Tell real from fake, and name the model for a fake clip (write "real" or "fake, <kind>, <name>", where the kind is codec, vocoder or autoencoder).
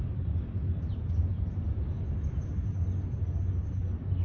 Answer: real